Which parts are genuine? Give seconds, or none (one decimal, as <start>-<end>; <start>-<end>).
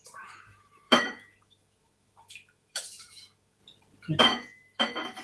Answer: 3.6-4.2